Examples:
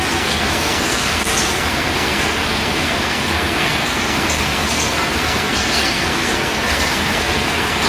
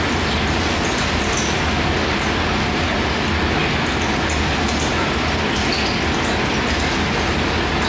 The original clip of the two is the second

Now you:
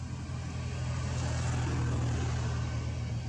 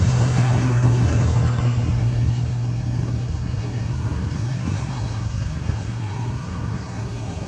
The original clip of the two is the first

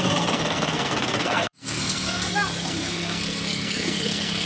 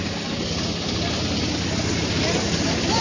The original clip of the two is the second